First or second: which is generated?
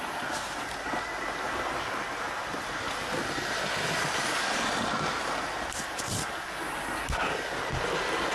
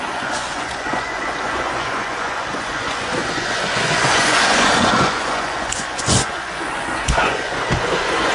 second